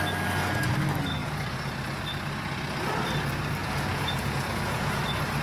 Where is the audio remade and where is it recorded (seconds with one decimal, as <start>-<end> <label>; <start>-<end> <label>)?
0.0-1.2 recorded; 1.2-2.0 remade; 2.0-3.6 recorded; 3.6-5.0 remade; 5.0-5.4 recorded

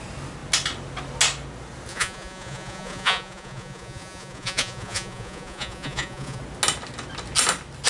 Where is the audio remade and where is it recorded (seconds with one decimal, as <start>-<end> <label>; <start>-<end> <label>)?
0.0-1.9 recorded; 1.9-6.4 remade; 6.4-7.9 recorded

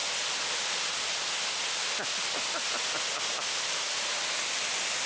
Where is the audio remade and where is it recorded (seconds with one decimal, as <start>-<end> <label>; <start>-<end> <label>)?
0.0-5.1 recorded